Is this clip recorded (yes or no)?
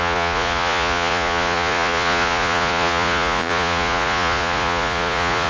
no